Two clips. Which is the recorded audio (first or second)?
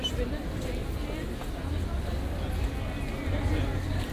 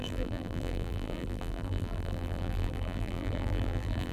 first